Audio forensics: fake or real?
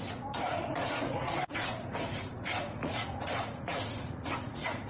fake